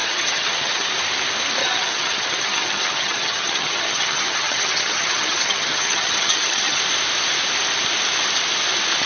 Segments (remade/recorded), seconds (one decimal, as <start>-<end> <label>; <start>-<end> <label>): 0.0-0.9 remade; 0.9-1.6 recorded; 1.6-6.8 remade; 6.8-9.1 recorded